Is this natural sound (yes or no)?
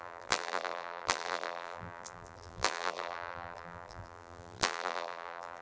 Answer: no